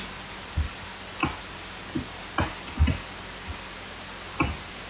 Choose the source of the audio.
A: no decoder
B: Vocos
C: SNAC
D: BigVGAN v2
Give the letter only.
A